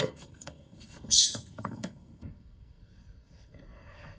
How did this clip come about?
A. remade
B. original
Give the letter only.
A